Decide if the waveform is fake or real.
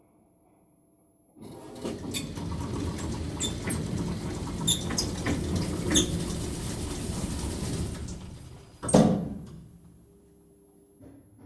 real